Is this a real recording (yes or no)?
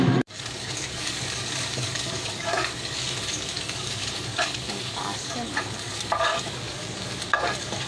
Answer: no